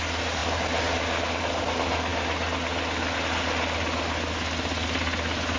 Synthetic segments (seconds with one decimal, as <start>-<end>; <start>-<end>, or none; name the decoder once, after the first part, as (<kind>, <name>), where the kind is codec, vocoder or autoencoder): none